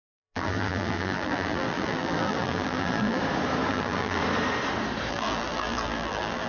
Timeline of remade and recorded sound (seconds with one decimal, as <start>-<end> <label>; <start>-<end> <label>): 0.0-3.2 remade; 3.2-3.7 recorded; 3.7-4.2 remade; 4.2-5.1 recorded; 5.1-6.5 remade